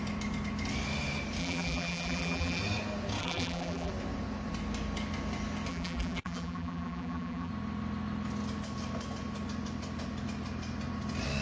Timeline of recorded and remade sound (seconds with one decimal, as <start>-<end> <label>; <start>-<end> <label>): 0.0-1.4 recorded; 1.4-2.6 remade; 2.6-3.2 recorded; 3.2-3.9 remade; 3.9-5.7 recorded; 5.7-7.5 remade; 7.5-11.4 recorded